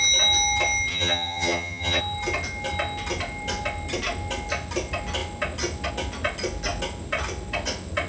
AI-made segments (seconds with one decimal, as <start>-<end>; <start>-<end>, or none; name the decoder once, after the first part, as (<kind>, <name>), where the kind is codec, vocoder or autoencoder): 0.9-2.0 (vocoder, HiFi-GAN)